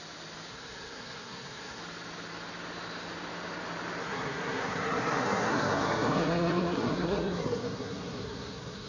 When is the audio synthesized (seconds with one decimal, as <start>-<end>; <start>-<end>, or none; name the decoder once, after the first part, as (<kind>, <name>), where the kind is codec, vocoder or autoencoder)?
0.5-1.8 (codec, SNAC); 4.0-8.9

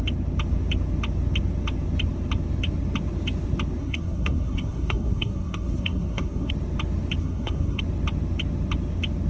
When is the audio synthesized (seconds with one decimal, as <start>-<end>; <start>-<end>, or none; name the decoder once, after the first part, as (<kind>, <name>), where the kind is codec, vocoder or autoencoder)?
3.8-6.5 (codec, SNAC); 7.2-7.8

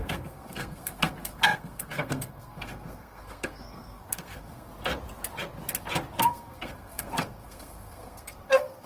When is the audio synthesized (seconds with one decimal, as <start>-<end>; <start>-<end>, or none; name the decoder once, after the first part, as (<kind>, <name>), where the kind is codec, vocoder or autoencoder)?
0.0-4.7 (codec, SNAC); 6.2-8.9

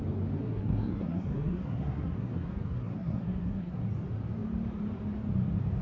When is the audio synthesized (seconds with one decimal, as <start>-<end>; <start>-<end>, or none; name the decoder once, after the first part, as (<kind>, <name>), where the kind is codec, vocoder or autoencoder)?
0.4-3.8 (codec, SNAC)

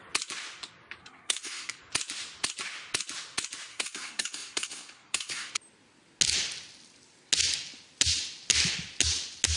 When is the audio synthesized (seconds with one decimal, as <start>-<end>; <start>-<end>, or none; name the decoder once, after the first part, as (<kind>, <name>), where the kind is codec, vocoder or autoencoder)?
1.0-1.8 (codec, SNAC); 3.7-5.5

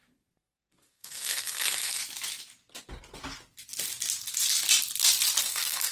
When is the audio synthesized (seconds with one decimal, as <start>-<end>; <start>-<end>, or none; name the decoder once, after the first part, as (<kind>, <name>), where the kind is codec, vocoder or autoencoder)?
0.0-2.0 (codec, SNAC); 5.4-5.9

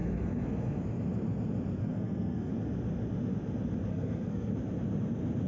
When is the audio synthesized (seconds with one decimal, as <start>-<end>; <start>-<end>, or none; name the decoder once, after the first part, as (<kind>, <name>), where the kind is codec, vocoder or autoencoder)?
0.0-0.8 (codec, SNAC); 1.8-2.5; 3.9-4.5